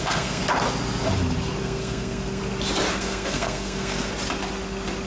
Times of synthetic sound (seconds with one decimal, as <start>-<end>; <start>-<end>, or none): 0.0-0.4; 1.6-2.4; 2.9-4.1